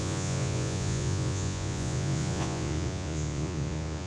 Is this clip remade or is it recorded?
remade